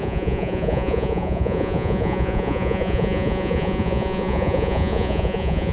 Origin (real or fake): fake